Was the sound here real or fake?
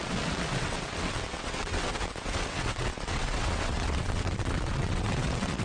fake